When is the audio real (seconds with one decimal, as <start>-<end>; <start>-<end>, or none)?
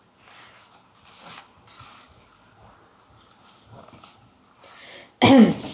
0.0-5.7